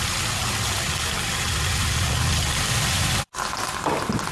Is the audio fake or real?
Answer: real